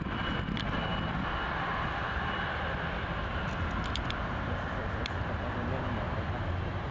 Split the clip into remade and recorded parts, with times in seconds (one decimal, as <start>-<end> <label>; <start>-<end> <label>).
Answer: 0.0-6.9 recorded